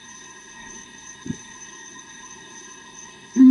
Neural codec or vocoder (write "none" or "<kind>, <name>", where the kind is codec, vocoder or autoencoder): codec, SNAC